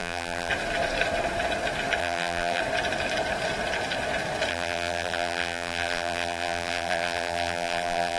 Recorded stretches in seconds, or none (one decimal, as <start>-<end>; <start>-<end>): 0.5-2.0; 2.6-4.5